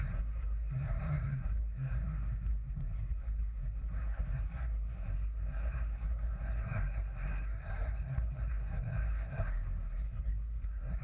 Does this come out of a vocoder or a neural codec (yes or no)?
yes